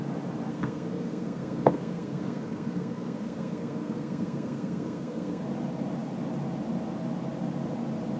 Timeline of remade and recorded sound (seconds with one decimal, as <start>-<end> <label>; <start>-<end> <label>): 0.0-0.5 recorded; 0.5-5.4 remade; 5.4-8.2 recorded